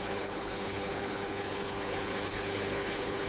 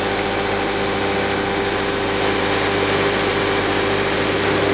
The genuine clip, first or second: second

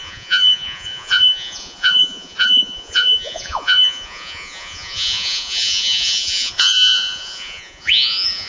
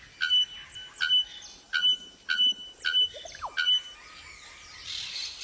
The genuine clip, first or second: second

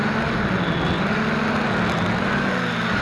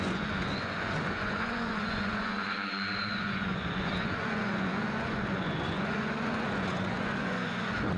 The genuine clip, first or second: first